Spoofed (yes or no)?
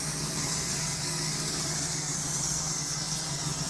yes